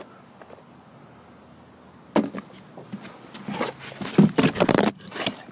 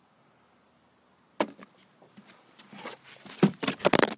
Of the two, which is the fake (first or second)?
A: second